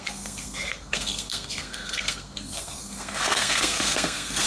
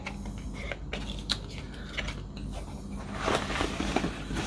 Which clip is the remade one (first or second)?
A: first